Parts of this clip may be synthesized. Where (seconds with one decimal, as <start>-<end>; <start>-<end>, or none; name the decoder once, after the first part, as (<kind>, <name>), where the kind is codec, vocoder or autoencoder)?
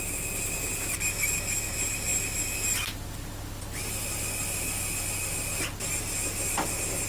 none